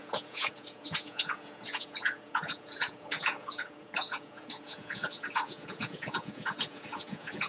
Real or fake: fake